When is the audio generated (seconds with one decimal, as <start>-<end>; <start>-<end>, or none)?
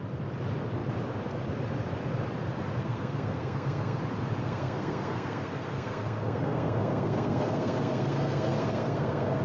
2.8-4.0; 4.4-9.4